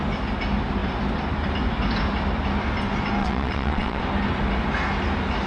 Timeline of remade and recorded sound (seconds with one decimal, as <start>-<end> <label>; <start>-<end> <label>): 0.0-3.2 recorded; 3.2-4.0 remade; 4.0-5.5 recorded